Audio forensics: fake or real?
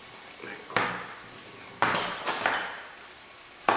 fake